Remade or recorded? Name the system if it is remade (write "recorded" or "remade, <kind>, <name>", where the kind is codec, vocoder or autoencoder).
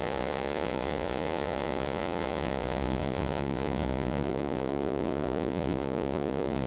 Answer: remade, vocoder, Vocos